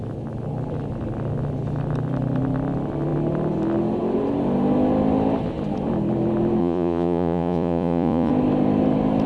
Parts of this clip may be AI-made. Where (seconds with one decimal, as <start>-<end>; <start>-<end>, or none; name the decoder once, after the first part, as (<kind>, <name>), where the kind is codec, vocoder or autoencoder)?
6.6-8.3 (vocoder, Vocos)

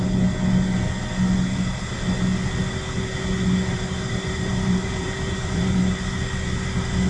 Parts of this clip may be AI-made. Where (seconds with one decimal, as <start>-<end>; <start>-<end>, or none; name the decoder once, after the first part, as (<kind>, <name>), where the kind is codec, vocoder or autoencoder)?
3.7-5.6 (vocoder, BigVGAN v2)

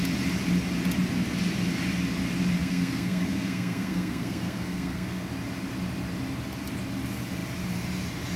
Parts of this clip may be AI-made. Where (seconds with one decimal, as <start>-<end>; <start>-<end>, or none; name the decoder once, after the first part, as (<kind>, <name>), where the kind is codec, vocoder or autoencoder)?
2.6-5.3 (codec, SNAC)

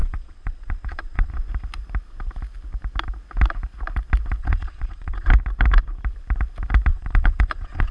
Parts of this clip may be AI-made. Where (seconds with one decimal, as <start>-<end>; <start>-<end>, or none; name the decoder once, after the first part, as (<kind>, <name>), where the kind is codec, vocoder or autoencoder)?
0.0-1.3 (vocoder, Vocos); 4.4-5.3; 6.9-7.9

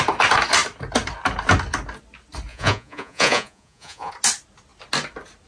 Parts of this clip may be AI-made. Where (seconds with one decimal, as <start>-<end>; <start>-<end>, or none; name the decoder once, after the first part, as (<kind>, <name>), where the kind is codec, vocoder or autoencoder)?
2.5-4.1 (vocoder, Vocos)

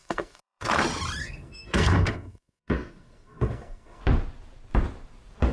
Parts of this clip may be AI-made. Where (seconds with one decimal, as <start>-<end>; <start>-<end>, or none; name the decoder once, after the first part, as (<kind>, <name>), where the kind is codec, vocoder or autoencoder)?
0.0-0.7 (codec, SNAC); 1.2-4.0